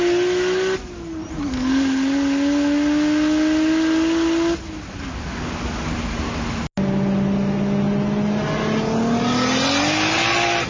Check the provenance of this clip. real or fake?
real